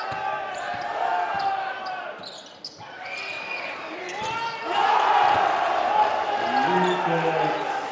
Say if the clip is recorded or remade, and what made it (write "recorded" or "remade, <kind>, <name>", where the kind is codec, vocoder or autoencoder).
recorded